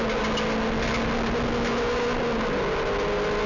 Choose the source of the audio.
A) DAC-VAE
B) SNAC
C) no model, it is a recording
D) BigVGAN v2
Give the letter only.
C